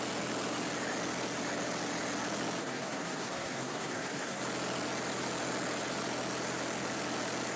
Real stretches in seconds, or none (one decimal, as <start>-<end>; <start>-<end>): 0.0-2.6; 4.4-7.6